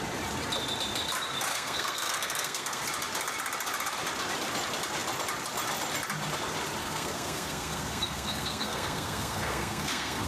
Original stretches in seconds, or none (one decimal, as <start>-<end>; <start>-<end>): 0.0-1.5; 2.8-6.8